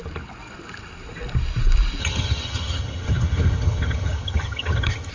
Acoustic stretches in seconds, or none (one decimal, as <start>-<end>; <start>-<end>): 0.0-2.0